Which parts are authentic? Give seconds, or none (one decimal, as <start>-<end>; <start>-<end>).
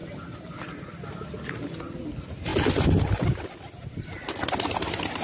0.0-5.2